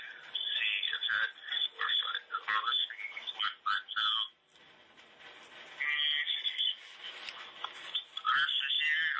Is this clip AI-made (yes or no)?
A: no